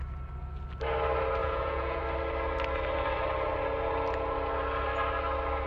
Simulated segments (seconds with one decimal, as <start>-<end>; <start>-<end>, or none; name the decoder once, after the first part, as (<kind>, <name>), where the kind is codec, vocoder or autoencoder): 1.4-2.0 (vocoder, Vocos)